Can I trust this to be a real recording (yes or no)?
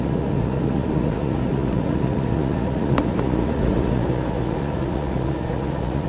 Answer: no